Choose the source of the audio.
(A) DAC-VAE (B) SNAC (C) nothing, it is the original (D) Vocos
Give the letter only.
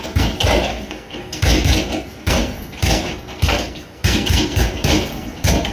B